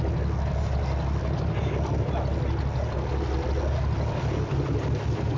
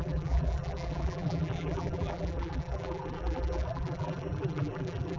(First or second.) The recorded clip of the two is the first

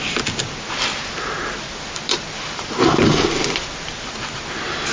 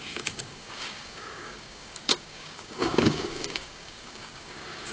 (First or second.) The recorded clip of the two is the first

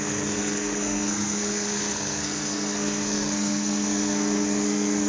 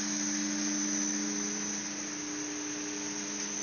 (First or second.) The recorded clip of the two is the second